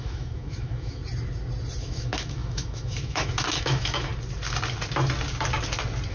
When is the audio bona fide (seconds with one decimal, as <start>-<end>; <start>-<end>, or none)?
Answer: 1.0-1.8; 4.1-6.1